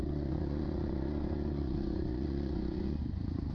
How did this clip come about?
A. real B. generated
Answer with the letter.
B